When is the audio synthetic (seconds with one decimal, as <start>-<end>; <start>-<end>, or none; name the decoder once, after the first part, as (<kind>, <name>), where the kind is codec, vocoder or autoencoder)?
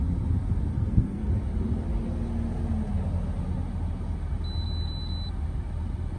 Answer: 0.7-1.3 (codec, SNAC)